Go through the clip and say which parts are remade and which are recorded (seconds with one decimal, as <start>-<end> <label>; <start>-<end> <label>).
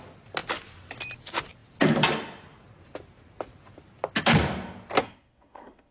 0.0-5.0 recorded; 5.0-5.9 remade